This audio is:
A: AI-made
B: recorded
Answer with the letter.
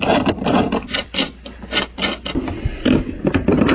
B